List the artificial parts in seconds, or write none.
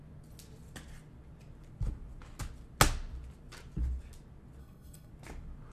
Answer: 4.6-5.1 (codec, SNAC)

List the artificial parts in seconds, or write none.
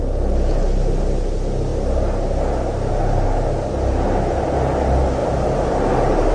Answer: 5.2-6.3 (vocoder, BigVGAN v2)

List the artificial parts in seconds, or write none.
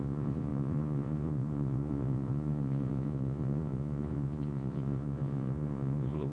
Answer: 0.0-6.3 (vocoder, Vocos)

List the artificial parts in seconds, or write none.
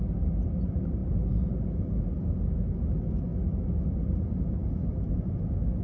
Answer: none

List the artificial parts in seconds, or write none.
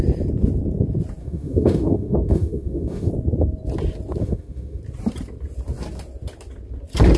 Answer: 1.2-3.1 (autoencoder, DAC-VAE); 4.2-4.8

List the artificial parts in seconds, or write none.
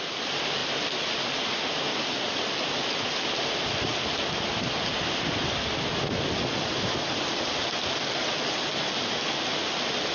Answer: none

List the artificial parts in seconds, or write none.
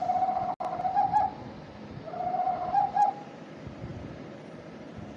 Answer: 2.5-5.2 (vocoder, BigVGAN v2)